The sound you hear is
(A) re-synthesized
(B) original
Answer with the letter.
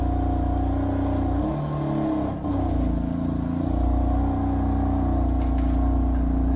B